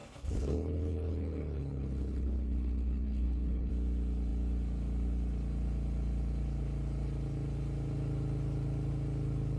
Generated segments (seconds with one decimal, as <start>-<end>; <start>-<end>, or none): 0.0-3.7